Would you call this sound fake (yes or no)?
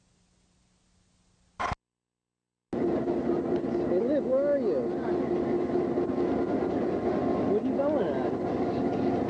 no